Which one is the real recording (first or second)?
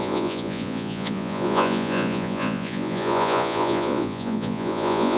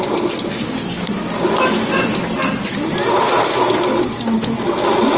second